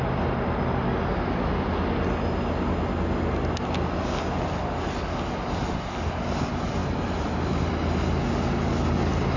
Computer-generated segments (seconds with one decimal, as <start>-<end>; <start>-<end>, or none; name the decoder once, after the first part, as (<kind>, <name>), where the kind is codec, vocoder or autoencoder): 6.8-7.7 (vocoder, BigVGAN v2)